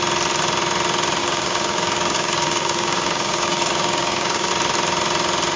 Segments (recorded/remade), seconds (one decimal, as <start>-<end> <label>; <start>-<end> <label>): 0.0-1.2 recorded; 1.2-4.5 remade; 4.5-5.6 recorded